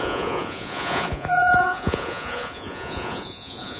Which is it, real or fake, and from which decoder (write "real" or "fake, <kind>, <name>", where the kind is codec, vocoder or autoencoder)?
fake, vocoder, Vocos